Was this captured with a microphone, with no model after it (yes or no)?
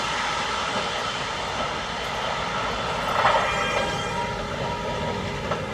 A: yes